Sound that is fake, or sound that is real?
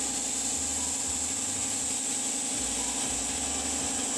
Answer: real